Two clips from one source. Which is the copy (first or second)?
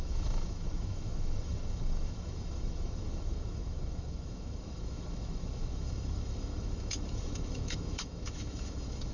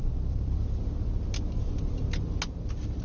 first